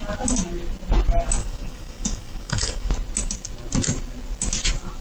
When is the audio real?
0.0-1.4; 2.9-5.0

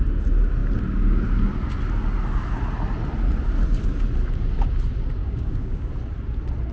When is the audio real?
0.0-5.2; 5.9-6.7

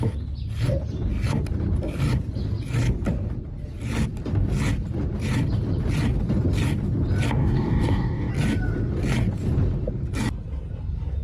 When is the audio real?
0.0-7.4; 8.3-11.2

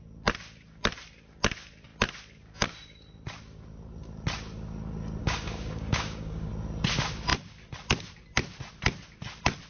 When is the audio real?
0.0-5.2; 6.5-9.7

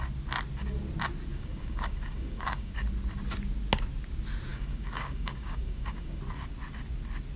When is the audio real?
0.0-1.3; 2.7-4.5; 6.2-7.4